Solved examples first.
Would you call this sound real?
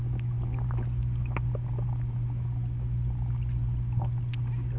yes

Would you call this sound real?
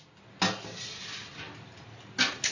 yes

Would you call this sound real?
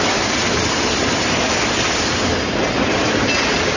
yes